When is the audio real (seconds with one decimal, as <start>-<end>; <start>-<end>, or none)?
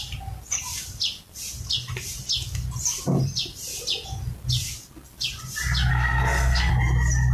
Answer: 0.0-5.9; 6.7-7.3